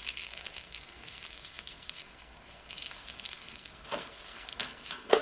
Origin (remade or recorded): remade